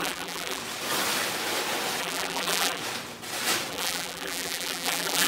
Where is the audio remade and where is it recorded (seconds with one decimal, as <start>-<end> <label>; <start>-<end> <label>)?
0.0-0.6 remade; 0.6-2.0 recorded; 2.0-2.8 remade; 2.8-3.7 recorded; 3.7-5.3 remade